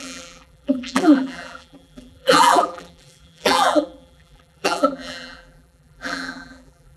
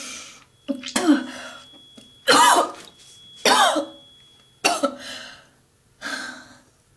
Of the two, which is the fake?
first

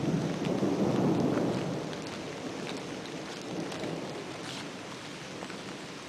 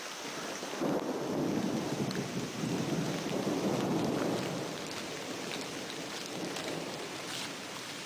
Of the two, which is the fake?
second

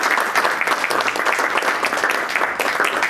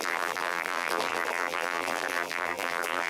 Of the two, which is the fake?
second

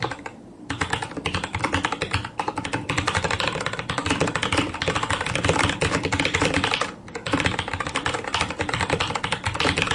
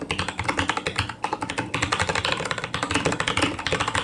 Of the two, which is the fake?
first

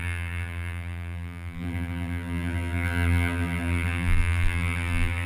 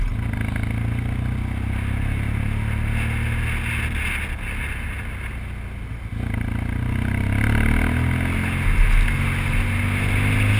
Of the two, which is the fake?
first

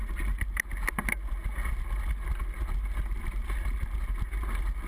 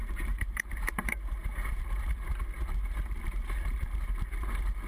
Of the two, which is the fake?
second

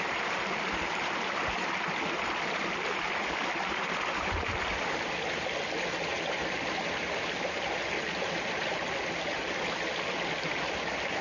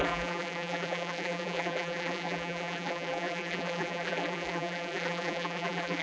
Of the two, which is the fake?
second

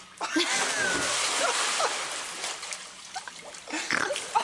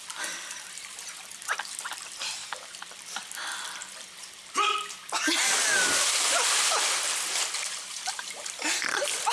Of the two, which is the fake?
second